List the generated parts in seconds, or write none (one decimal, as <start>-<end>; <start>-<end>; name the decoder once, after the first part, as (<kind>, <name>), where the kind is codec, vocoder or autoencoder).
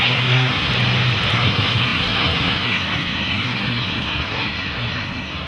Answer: 0.0-0.7 (codec, SNAC); 1.3-5.5